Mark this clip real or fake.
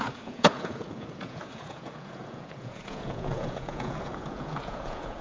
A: fake